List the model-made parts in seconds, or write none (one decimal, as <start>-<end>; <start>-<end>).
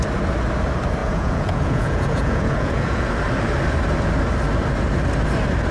1.0-3.1